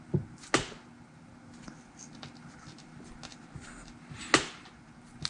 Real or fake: real